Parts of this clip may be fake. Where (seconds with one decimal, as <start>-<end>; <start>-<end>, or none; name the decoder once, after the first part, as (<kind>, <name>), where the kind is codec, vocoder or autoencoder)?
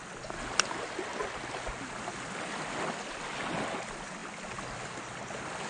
4.2-5.7 (vocoder, BigVGAN v2)